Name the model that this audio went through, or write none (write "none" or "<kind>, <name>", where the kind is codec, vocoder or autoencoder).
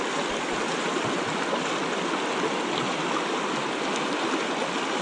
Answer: none